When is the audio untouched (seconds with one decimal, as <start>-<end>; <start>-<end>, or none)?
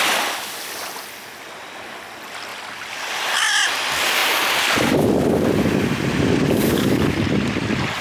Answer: 0.0-2.5; 3.7-6.1; 7.6-8.0